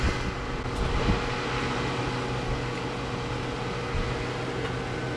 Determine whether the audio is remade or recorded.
recorded